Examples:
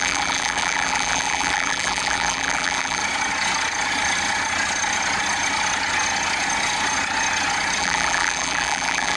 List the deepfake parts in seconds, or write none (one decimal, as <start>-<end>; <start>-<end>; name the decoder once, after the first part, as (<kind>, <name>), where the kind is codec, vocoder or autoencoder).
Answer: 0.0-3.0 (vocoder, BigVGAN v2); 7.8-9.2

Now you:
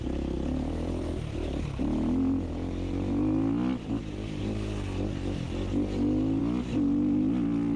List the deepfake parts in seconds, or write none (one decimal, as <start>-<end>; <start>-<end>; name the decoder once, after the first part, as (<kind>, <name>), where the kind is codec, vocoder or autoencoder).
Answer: none

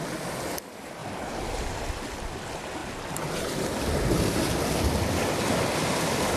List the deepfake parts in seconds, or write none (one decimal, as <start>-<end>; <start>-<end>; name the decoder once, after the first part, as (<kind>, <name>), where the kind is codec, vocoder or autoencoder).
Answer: 2.8-3.8 (vocoder, BigVGAN v2)

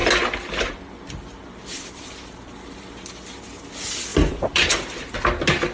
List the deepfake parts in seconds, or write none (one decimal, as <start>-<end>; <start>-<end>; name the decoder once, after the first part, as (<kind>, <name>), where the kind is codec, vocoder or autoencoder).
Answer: 1.6-2.9 (vocoder, BigVGAN v2); 4.1-4.7

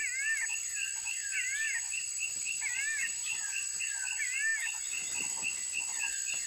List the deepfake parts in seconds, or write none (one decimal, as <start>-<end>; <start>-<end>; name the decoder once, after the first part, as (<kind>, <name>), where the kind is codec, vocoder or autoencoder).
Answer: 0.0-3.8 (vocoder, BigVGAN v2)